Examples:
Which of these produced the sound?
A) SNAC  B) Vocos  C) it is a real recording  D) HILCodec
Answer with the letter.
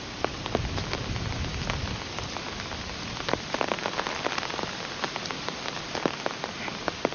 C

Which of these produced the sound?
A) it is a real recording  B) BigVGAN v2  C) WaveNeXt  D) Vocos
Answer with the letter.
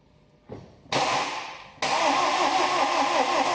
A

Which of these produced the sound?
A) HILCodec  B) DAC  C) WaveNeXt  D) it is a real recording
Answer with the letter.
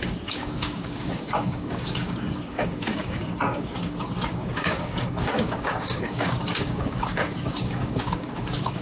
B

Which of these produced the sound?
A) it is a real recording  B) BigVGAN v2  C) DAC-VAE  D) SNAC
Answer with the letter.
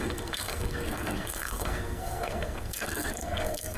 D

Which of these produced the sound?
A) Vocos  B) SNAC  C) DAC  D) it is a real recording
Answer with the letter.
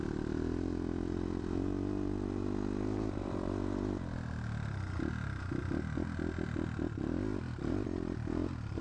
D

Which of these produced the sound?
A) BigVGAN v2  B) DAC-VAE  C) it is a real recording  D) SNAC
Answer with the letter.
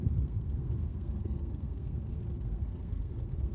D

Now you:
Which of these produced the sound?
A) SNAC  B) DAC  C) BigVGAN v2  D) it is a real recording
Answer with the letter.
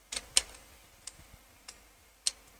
D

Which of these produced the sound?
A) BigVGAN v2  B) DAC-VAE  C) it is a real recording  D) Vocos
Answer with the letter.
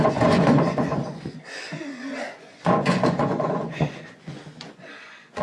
D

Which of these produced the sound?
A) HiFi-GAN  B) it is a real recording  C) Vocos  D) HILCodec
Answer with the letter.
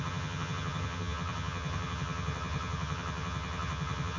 A